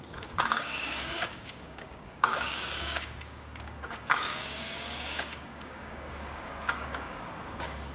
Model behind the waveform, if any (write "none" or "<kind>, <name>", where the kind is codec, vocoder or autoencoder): codec, DAC